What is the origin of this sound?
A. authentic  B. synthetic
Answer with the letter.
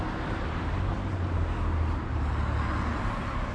A